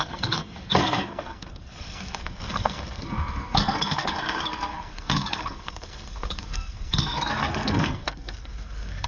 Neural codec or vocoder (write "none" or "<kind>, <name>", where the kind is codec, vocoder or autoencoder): codec, SNAC